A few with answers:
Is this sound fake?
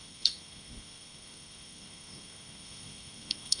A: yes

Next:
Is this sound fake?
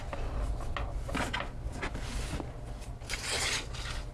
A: no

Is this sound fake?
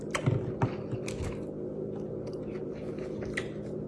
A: no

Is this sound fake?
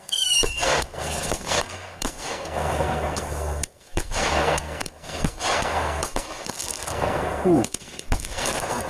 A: yes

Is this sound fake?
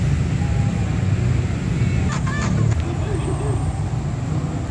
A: no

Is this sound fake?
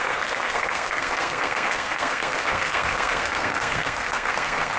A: yes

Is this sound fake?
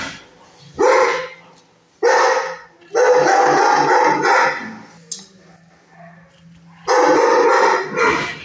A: no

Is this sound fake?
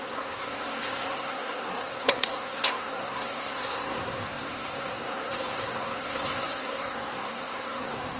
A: yes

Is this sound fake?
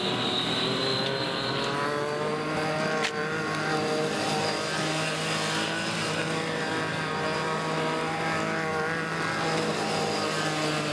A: no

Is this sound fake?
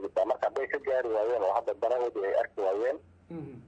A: no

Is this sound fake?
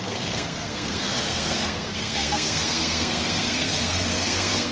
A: yes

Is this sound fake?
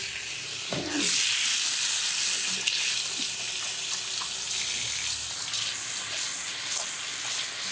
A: no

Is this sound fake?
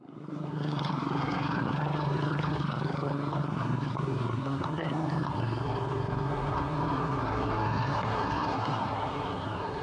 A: yes